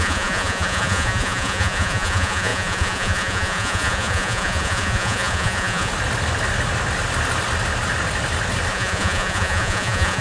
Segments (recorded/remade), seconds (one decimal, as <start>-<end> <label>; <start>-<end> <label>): 0.0-5.9 remade; 5.9-8.7 recorded; 8.7-10.2 remade